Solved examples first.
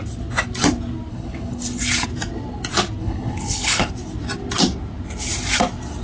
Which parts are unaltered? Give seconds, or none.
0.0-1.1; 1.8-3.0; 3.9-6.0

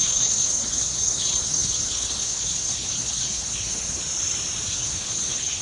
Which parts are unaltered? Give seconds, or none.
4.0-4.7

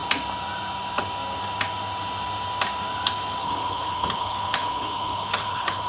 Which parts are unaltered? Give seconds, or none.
0.0-3.4